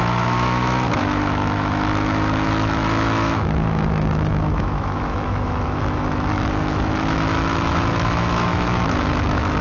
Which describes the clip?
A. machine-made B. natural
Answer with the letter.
A